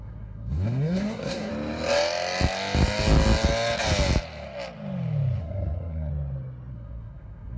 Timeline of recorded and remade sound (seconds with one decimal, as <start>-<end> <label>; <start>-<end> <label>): 0.0-1.5 remade; 1.5-5.4 recorded; 5.4-6.1 remade; 6.1-6.7 recorded; 6.7-7.6 remade